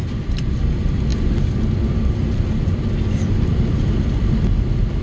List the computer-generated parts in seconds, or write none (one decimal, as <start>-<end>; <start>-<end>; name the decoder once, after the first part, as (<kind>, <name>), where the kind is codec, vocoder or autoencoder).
0.0-0.6 (vocoder, BigVGAN v2)